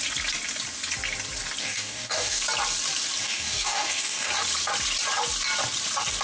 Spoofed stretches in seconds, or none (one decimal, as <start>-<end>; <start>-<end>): 1.6-2.4; 3.2-4.3